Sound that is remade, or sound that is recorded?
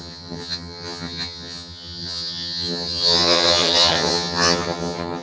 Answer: remade